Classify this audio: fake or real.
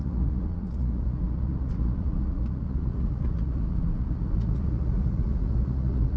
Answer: fake